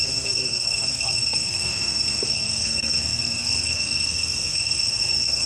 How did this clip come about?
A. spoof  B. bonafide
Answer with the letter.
A